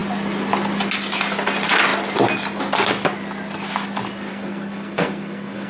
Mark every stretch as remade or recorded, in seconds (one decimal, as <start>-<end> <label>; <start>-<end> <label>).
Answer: 0.0-4.3 recorded; 4.3-5.7 remade